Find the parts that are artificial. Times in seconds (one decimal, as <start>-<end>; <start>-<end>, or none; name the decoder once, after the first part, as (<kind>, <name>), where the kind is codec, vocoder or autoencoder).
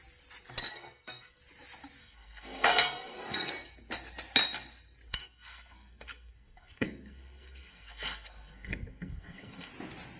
0.7-1.4 (codec, SNAC); 2.0-3.5; 5.1-9.7